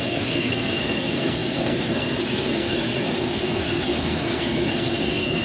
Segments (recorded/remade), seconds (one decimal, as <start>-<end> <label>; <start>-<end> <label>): 0.0-5.4 remade